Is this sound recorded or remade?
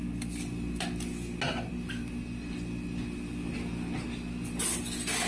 recorded